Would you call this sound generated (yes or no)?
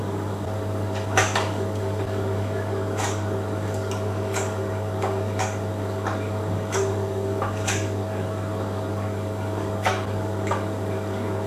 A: yes